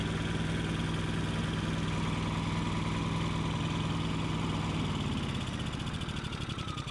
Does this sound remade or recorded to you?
recorded